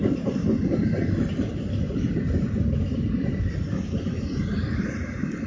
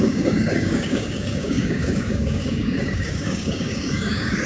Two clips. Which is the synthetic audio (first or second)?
second